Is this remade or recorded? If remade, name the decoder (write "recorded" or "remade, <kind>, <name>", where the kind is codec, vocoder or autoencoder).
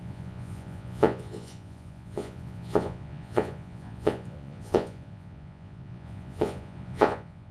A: remade, vocoder, Vocos